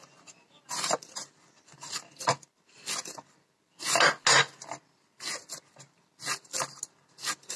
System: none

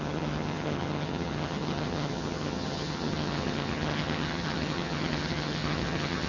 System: vocoder, HiFi-GAN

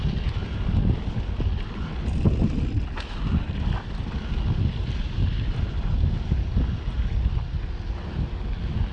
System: none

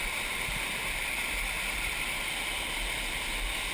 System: none